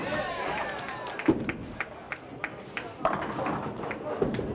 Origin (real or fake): real